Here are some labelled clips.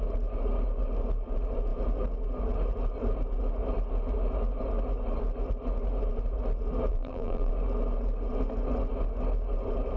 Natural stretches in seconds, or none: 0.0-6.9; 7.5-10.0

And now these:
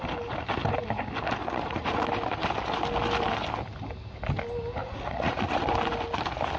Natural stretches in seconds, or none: 0.0-1.4; 2.0-4.8; 5.7-6.6

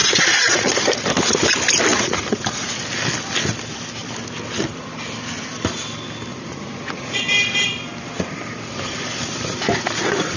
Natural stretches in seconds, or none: 1.1-1.9; 2.8-6.3; 7.2-10.4

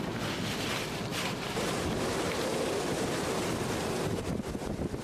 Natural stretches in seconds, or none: 0.0-1.1; 1.9-5.0